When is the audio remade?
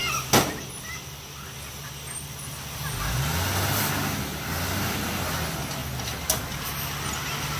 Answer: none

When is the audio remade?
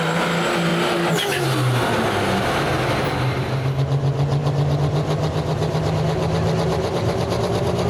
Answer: none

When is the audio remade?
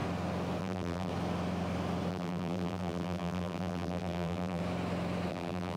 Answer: 0.6-1.1 (vocoder, BigVGAN v2); 2.1-4.6; 5.3-5.8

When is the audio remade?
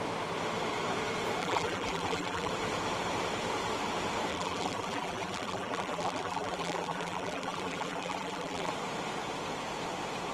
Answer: 1.4-2.5 (vocoder, BigVGAN v2); 4.3-8.7